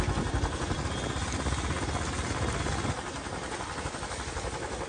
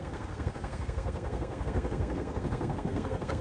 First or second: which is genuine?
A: first